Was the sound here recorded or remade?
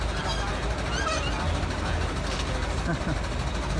recorded